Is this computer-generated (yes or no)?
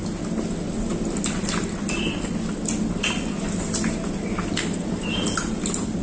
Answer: no